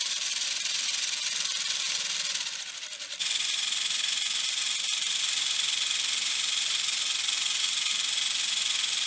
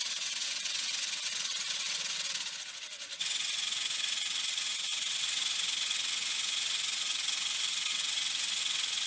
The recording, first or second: first